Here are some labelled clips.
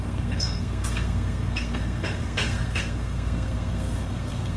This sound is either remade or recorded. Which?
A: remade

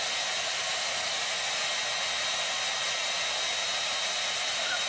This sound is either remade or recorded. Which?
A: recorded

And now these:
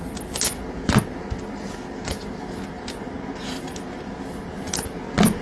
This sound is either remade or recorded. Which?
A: recorded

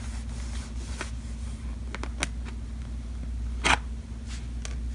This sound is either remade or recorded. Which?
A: recorded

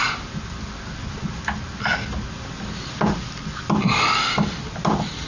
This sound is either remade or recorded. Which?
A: recorded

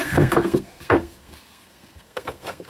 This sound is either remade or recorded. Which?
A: remade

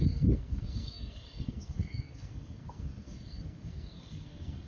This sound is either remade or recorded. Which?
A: remade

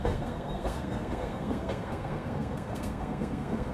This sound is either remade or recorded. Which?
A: remade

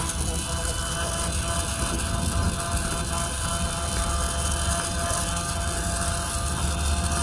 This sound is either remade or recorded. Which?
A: recorded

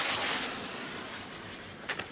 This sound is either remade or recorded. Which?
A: recorded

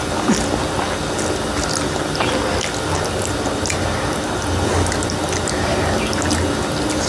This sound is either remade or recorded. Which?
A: recorded